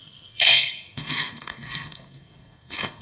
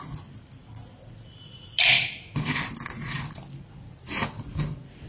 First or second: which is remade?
first